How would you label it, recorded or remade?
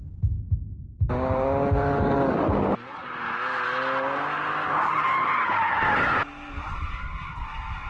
recorded